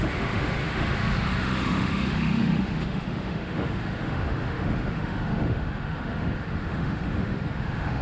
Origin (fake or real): fake